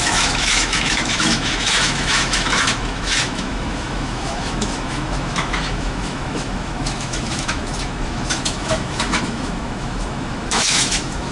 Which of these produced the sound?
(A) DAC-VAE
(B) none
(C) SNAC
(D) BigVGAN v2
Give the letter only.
A